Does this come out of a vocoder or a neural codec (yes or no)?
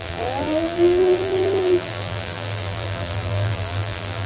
yes